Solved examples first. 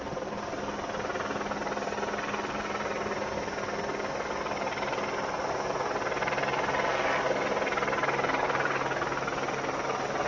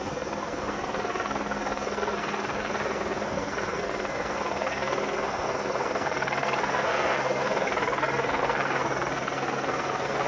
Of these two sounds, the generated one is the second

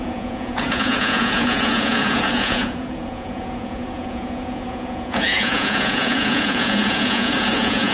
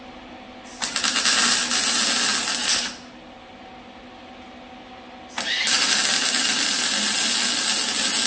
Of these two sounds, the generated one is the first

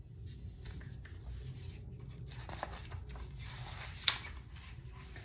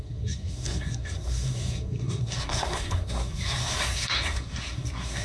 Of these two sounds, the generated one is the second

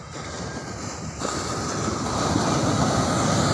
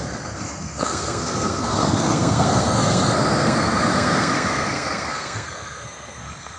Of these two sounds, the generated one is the second